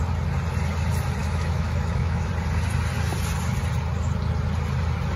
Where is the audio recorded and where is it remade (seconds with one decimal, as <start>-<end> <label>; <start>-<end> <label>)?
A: 0.0-1.2 recorded; 1.2-2.3 remade; 2.3-5.2 recorded